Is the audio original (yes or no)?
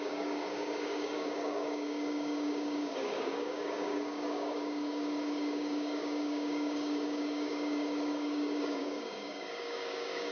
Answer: no